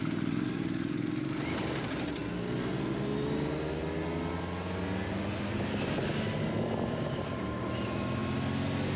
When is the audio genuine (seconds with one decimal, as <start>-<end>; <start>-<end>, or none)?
2.2-6.9; 8.2-9.0